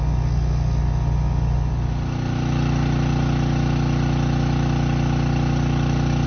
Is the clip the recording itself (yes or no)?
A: yes